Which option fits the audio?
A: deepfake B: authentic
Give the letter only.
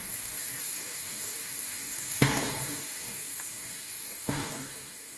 A